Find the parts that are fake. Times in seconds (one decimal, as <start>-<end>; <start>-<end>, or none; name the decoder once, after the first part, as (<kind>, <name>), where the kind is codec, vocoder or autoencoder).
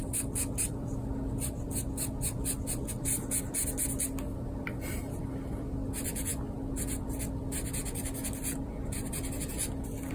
none